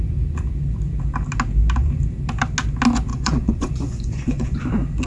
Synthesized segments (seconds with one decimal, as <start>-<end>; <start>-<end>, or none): 3.1-4.6